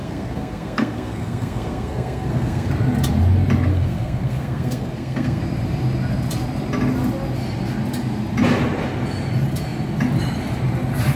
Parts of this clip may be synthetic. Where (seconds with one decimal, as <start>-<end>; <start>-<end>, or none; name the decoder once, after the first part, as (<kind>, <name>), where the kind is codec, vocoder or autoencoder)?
0.0-2.7 (codec, SNAC); 3.7-5.4